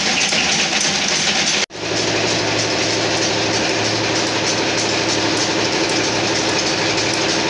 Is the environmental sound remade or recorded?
recorded